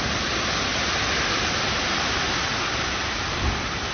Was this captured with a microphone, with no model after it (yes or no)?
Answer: yes